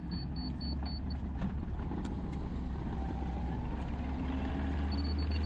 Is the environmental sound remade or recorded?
recorded